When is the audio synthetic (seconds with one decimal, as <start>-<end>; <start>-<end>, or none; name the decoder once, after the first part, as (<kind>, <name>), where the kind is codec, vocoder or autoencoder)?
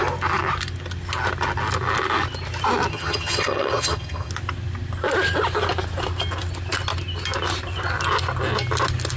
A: 2.9-4.3 (vocoder, HiFi-GAN)